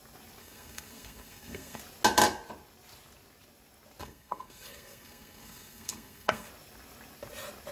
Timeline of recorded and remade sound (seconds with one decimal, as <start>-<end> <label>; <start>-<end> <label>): 0.0-0.4 recorded; 0.4-1.8 remade; 1.8-4.0 recorded; 4.0-6.5 remade; 6.5-7.7 recorded